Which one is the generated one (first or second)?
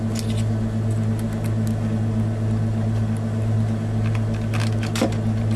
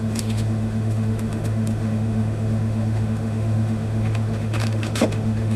second